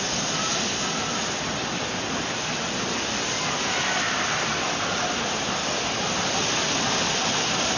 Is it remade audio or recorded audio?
recorded